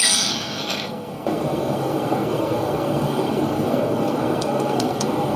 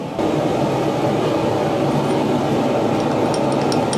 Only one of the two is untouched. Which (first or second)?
second